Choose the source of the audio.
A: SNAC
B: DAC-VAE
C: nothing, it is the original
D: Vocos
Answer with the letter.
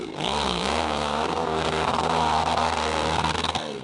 A